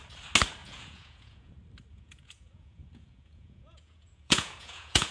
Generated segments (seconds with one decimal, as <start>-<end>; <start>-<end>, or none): 0.6-1.5; 1.9-5.1